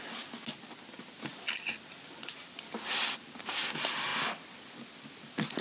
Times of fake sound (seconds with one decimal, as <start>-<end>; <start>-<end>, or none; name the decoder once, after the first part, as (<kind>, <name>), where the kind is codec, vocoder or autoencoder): none